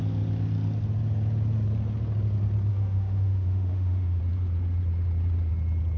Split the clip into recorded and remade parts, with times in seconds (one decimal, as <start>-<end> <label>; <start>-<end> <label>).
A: 0.0-2.7 recorded; 2.7-4.2 remade; 4.2-6.0 recorded